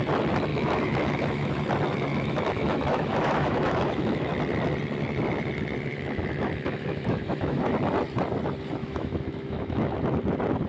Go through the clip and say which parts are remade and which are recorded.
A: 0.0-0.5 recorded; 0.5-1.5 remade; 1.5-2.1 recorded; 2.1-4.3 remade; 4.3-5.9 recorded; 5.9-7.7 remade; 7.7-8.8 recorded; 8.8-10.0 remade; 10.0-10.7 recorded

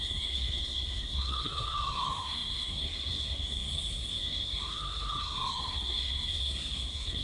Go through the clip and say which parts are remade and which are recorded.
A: 0.0-7.2 remade

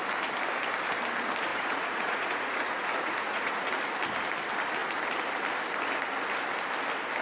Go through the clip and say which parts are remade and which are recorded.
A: 0.0-1.5 recorded; 1.5-3.5 remade; 3.5-7.2 recorded

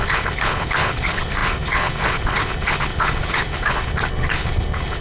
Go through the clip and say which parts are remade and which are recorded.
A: 0.0-5.0 remade